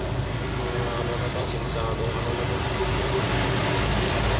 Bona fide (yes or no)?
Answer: yes